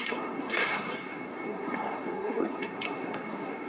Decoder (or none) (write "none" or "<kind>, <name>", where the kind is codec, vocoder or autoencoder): codec, SNAC